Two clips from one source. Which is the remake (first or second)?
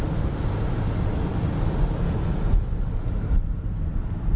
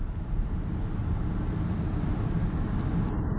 first